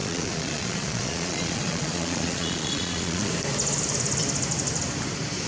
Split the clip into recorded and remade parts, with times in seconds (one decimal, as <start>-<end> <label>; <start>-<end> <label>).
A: 0.0-3.3 remade; 3.3-5.5 recorded